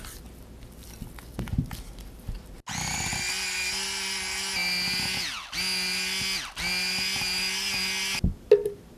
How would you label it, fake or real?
real